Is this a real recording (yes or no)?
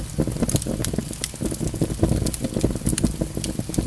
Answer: yes